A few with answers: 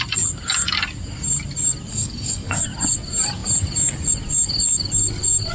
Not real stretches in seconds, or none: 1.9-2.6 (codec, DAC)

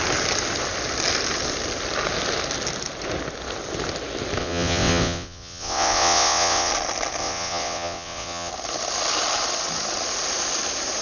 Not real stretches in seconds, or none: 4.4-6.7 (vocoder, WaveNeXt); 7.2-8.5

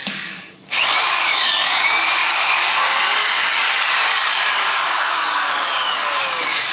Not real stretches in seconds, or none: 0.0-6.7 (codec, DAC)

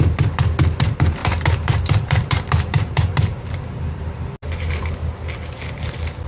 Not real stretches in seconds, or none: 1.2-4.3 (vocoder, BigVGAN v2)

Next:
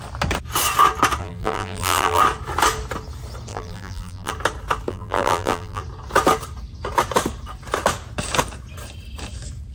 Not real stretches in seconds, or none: 1.2-2.2 (vocoder, BigVGAN v2); 3.5-4.3; 4.9-5.8

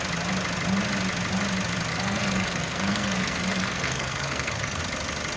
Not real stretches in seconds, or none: 1.9-4.8 (codec, SNAC)

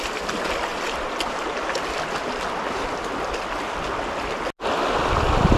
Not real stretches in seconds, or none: none

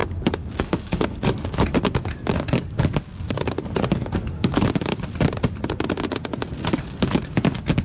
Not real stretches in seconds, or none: 0.0-4.9 (codec, DAC); 5.7-6.2; 6.7-7.8